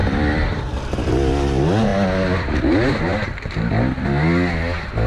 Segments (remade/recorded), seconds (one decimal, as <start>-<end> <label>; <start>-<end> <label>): 0.0-0.6 remade; 0.6-3.1 recorded; 3.1-3.7 remade; 3.7-5.1 recorded